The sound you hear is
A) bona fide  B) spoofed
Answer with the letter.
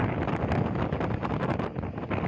A